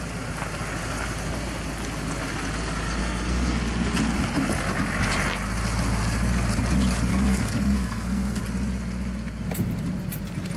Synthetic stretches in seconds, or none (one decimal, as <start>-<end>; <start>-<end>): 3.0-3.6; 7.1-8.4